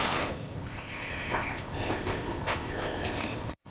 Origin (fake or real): fake